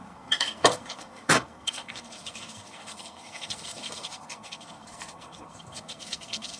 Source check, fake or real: fake